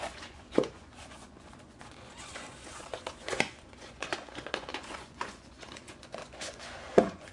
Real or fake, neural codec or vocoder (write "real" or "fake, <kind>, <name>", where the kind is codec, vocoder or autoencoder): fake, vocoder, Vocos